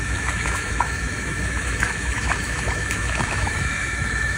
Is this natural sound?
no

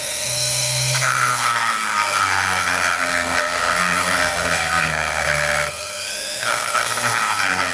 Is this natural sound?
no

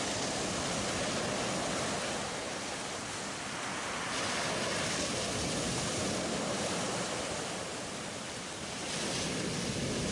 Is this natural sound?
yes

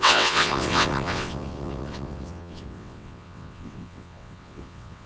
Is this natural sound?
no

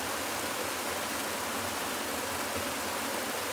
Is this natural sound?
yes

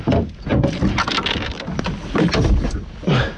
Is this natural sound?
yes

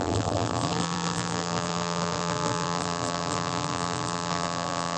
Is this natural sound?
no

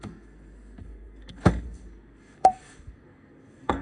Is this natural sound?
no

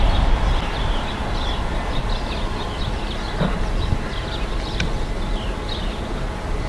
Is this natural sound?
yes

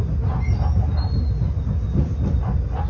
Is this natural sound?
yes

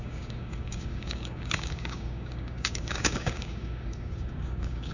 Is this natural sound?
no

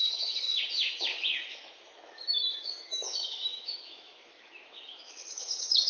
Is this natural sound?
no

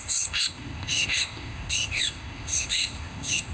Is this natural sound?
no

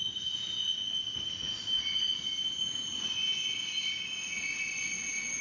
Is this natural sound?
yes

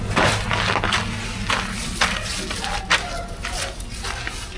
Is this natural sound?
yes